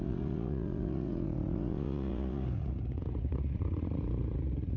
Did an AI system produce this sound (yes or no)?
yes